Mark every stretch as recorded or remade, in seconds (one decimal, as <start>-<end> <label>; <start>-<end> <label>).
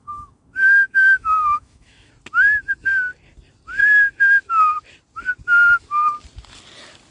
0.0-2.1 remade; 2.1-7.1 recorded